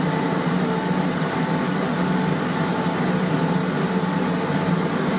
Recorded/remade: recorded